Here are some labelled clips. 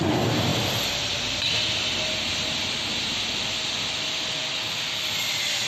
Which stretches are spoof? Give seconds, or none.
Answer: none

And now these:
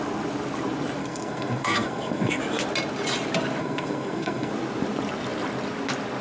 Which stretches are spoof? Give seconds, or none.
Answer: 1.0-2.4 (codec, SNAC); 3.6-4.5